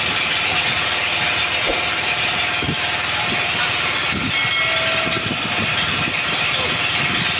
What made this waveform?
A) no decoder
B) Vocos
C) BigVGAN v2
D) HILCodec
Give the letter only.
A